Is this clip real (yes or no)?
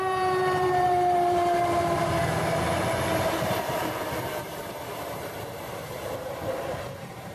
no